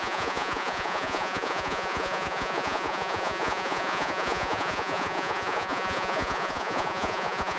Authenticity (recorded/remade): remade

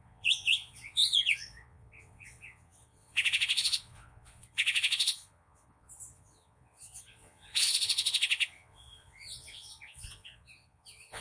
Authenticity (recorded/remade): remade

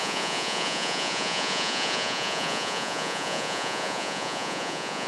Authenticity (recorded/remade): remade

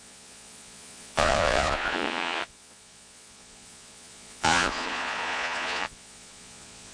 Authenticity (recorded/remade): remade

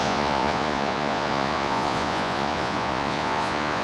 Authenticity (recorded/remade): remade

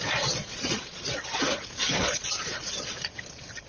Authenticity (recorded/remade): remade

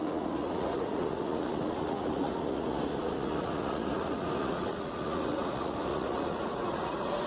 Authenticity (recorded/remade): remade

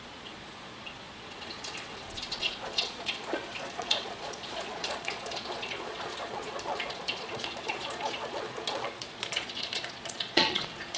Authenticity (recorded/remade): remade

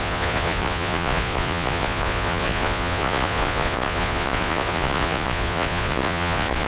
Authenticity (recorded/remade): remade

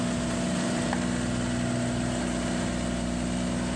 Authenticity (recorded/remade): recorded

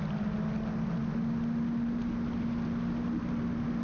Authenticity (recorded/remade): recorded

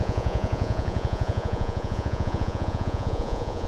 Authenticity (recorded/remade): remade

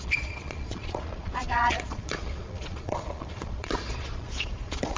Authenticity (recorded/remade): remade